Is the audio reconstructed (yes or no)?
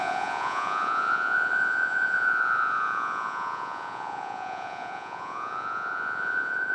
yes